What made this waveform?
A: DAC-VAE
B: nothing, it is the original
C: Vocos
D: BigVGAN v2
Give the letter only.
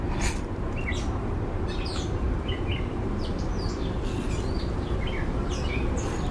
B